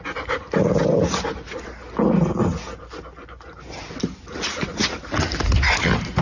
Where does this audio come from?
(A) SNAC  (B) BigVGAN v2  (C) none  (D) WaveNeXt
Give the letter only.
C